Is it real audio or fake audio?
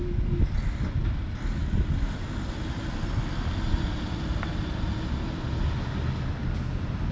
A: real